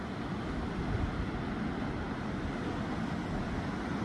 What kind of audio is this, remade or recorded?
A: recorded